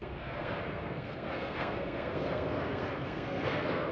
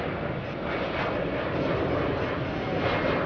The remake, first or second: first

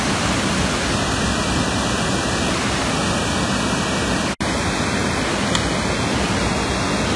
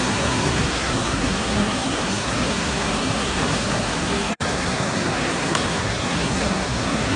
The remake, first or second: second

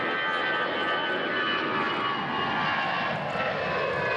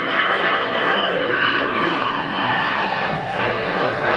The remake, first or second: second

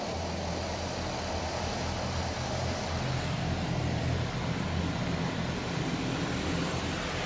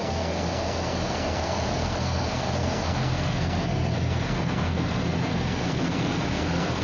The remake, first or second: second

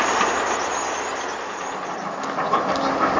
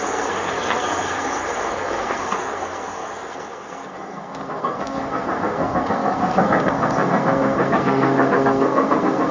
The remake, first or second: second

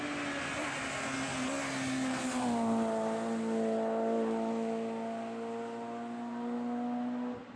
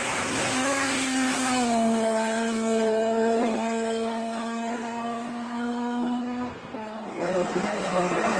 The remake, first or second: second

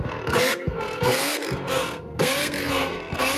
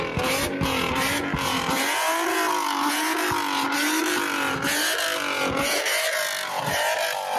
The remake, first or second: first